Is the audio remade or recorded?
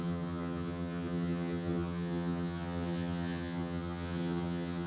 remade